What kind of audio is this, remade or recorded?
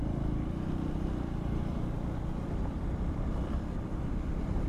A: remade